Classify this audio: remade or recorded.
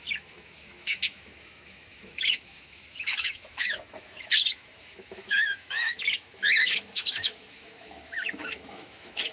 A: remade